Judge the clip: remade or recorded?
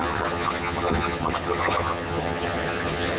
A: remade